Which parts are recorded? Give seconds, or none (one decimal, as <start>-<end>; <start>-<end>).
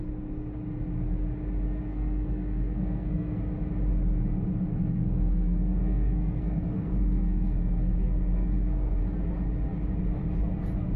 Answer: 0.0-1.9; 3.4-4.7; 9.0-11.0